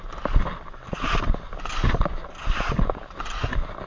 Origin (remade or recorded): recorded